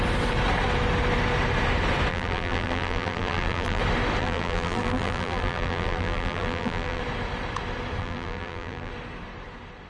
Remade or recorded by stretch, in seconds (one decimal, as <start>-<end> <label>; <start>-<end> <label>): 0.0-2.1 recorded; 2.1-3.8 remade; 3.8-4.2 recorded; 4.2-7.0 remade; 7.0-8.0 recorded; 8.0-8.9 remade; 8.9-9.9 recorded